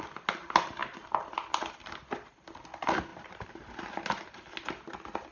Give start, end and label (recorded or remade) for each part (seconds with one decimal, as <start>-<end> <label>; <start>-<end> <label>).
0.0-3.1 recorded; 3.1-3.8 remade; 3.8-5.3 recorded